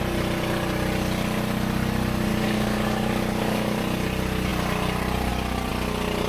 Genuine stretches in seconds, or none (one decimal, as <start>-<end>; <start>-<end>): 0.0-2.3; 3.8-6.3